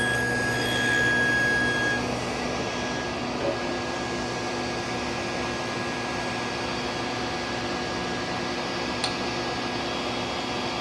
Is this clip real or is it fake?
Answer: real